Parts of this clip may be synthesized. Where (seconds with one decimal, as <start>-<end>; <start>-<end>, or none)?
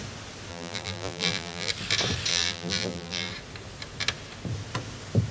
0.5-1.7; 2.3-3.3